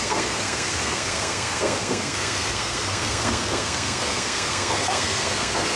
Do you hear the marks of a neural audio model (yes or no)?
yes